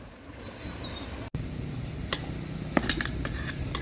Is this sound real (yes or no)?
yes